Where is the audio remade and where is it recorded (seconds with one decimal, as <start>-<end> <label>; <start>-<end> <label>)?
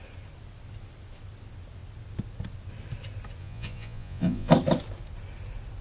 0.0-3.4 recorded; 3.4-4.5 remade; 4.5-5.8 recorded